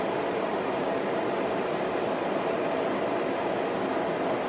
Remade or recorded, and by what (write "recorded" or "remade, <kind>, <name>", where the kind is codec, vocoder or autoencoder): recorded